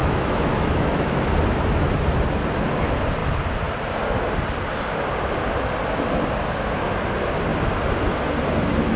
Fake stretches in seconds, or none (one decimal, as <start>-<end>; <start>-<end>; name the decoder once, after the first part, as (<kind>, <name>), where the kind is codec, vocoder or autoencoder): 0.0-1.3 (autoencoder, DAC-VAE)